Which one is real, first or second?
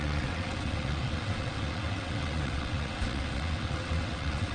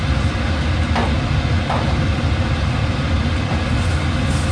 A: second